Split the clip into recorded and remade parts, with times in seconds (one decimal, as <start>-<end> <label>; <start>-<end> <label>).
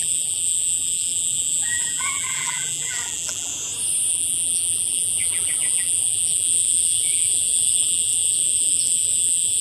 0.0-3.5 remade; 3.5-4.1 recorded; 4.1-9.6 remade